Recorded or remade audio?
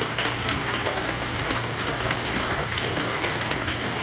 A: remade